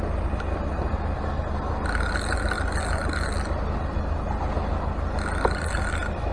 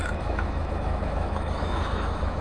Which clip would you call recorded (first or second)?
first